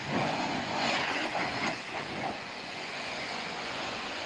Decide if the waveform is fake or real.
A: fake